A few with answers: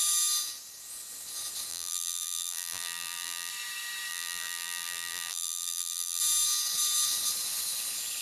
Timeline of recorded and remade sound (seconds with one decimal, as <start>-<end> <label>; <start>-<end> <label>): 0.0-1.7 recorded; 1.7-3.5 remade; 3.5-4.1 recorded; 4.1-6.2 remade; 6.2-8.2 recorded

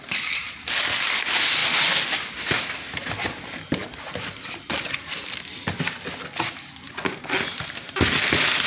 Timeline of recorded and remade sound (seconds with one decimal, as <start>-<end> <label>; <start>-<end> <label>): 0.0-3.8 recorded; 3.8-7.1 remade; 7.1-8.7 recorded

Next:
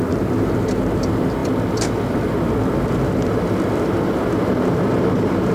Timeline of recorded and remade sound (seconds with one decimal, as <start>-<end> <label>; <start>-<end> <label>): 0.0-1.4 remade; 1.4-4.5 recorded; 4.5-5.5 remade